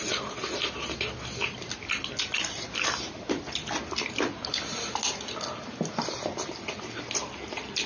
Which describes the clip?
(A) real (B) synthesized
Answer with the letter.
A